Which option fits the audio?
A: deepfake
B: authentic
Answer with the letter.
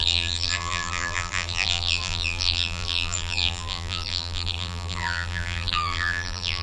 A